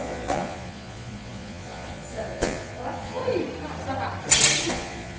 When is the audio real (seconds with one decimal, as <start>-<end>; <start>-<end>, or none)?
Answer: 3.2-4.7

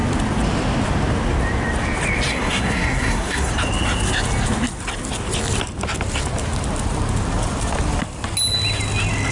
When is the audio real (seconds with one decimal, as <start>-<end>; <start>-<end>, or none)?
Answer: 0.0-2.3; 3.5-9.3